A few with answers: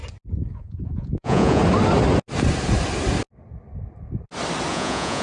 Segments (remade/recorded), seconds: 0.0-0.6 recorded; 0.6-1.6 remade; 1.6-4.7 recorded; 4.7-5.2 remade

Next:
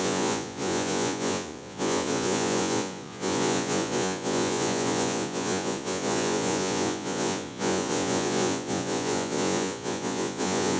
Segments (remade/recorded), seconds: 0.0-10.8 remade

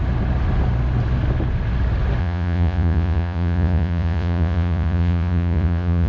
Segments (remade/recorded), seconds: 0.0-2.2 recorded; 2.2-6.1 remade

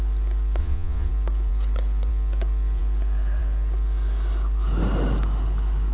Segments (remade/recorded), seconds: 0.0-0.6 recorded; 0.6-1.1 remade; 1.1-5.9 recorded

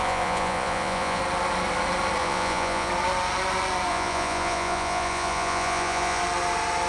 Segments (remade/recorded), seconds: 0.0-1.2 remade; 1.2-2.2 recorded; 2.2-2.9 remade; 2.9-3.9 recorded; 3.9-6.2 remade; 6.2-6.9 recorded